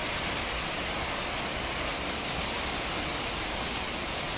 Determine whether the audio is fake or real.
real